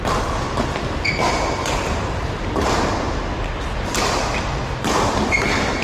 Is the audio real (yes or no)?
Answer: yes